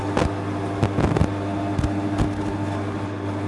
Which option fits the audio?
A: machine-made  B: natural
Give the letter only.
B